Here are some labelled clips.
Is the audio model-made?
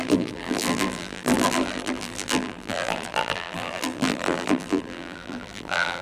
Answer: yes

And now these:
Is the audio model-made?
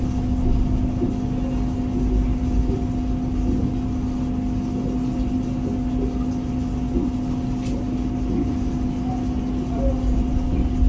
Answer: no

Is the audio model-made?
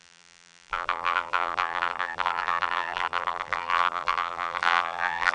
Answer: yes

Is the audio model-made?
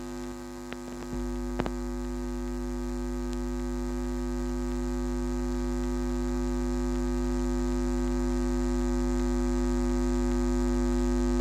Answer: no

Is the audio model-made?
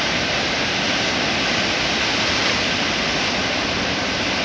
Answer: no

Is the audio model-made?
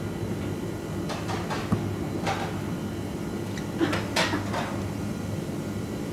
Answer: no